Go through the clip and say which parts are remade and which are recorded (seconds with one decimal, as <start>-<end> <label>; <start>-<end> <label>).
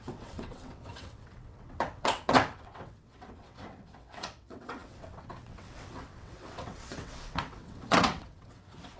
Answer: 0.0-9.0 remade